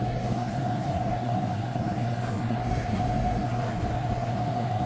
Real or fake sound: fake